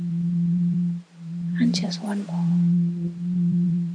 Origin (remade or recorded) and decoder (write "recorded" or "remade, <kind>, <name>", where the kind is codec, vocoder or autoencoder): remade, vocoder, BigVGAN v2